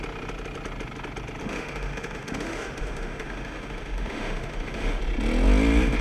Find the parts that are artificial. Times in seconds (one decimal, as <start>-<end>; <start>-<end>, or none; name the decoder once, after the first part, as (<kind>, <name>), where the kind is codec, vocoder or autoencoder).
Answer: 1.4-5.0 (autoencoder, DAC-VAE)